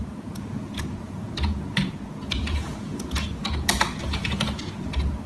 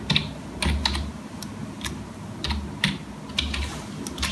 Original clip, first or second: second